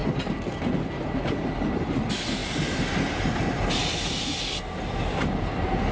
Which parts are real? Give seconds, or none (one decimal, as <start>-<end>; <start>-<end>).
0.0-5.9